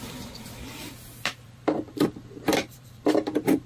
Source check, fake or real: fake